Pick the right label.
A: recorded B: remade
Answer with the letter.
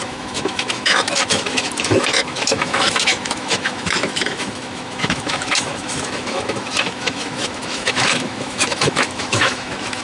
B